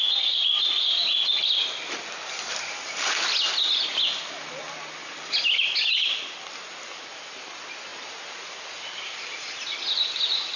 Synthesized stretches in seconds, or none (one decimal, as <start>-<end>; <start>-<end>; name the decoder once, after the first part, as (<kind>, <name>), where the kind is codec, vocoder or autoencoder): none